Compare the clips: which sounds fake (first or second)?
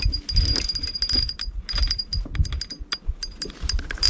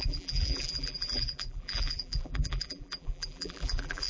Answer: second